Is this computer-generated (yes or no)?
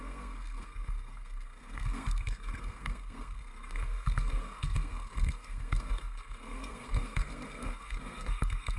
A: yes